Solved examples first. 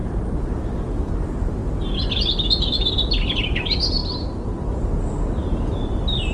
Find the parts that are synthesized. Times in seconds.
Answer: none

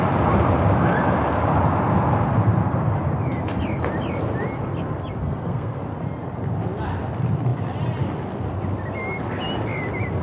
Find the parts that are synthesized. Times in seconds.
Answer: 5.2-5.8 (codec, SNAC)

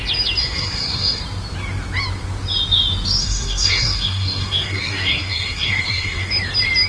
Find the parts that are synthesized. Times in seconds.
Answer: 0.4-1.2 (codec, SNAC); 3.2-6.3

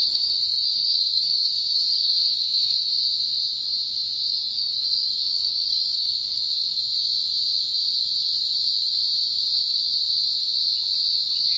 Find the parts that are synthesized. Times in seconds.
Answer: 0.0-2.9 (codec, SNAC); 4.3-6.8

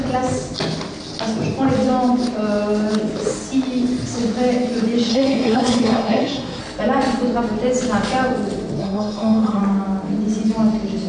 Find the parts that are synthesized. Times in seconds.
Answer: 5.1-6.6 (codec, SNAC); 8.8-9.6